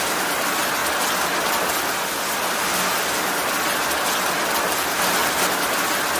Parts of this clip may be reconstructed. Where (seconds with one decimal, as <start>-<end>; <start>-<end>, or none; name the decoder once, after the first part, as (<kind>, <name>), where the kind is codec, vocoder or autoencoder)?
none